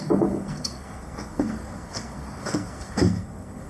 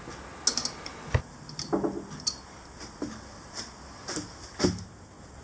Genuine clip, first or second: second